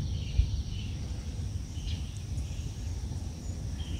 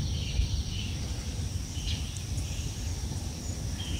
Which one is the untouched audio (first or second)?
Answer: first